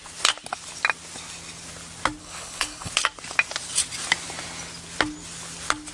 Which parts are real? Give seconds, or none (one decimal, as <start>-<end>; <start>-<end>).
0.0-2.2; 2.9-5.9